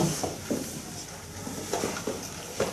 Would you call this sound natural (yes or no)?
yes